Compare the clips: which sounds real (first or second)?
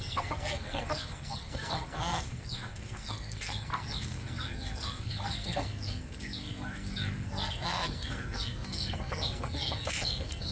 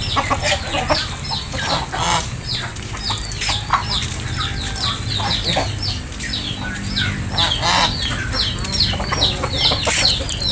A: second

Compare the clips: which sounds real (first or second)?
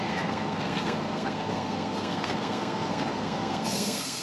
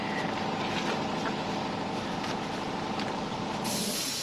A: second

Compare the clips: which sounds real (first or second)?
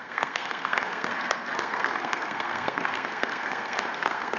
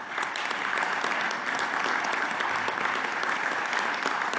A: second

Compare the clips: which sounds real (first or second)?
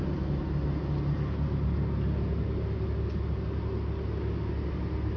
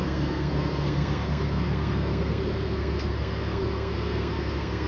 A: first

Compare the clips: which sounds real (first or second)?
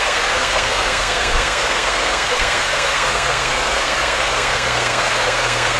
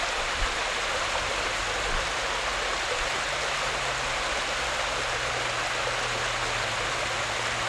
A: second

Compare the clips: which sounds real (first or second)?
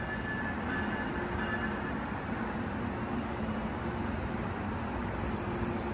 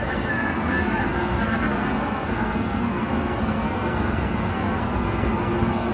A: first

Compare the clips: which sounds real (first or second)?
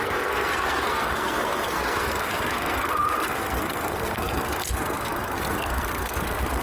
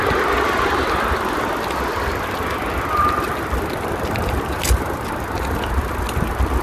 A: second